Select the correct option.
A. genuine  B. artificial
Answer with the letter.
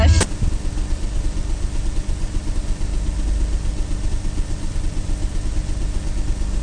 A